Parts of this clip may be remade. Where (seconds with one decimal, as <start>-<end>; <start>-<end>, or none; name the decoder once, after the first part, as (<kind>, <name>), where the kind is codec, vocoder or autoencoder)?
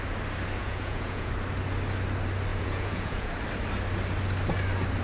0.6-1.3 (vocoder, Vocos); 2.5-3.3